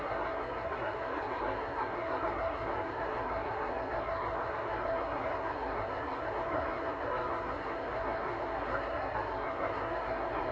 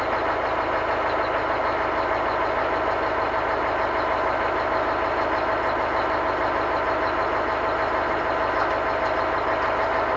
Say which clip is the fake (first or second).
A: first